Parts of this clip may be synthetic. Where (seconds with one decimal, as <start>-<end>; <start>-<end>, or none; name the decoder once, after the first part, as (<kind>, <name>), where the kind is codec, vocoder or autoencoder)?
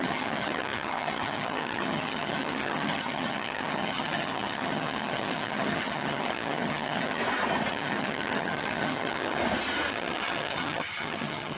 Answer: 0.0-7.2 (vocoder, HiFi-GAN); 7.7-9.4; 9.9-11.6